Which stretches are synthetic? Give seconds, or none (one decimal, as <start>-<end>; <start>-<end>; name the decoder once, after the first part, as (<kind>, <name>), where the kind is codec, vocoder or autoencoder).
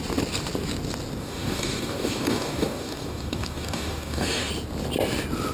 1.2-4.5 (codec, DAC)